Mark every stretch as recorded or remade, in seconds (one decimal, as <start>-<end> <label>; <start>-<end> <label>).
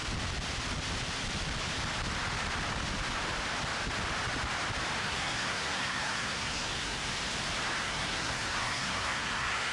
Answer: 0.0-5.0 recorded; 5.0-7.1 remade; 7.1-7.8 recorded; 7.8-9.7 remade